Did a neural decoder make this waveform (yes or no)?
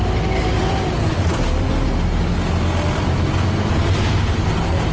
no